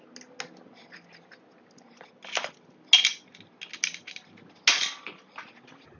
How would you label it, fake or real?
real